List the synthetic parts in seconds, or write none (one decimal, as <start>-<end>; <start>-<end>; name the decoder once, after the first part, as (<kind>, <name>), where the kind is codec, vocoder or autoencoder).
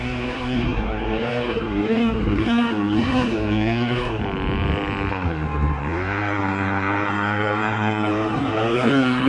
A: 0.0-4.2 (codec, SNAC); 5.1-9.3